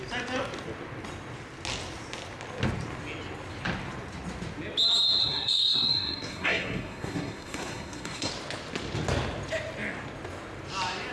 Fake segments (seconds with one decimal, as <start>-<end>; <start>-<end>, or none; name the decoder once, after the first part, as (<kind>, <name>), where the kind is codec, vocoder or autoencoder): 5.2-8.3 (codec, SNAC)